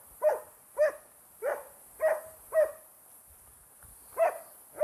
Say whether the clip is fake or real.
real